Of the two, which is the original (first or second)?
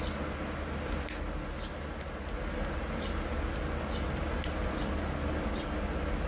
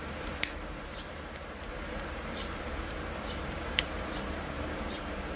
first